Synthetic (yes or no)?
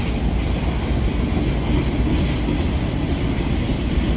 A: no